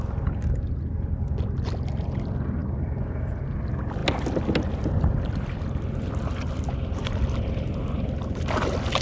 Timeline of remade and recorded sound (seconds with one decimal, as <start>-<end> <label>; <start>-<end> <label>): 0.0-9.0 recorded